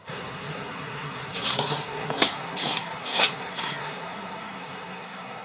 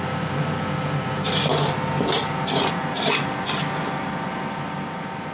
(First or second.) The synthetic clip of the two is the first